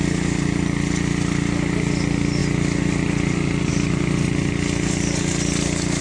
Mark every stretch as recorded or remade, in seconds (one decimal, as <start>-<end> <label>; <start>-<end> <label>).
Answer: 0.0-6.0 recorded